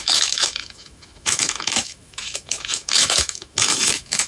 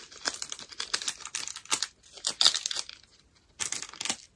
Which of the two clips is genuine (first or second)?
second